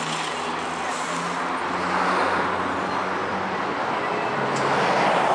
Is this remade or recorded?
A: recorded